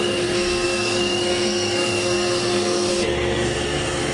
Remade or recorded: remade